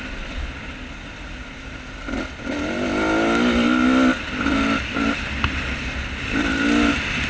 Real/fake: real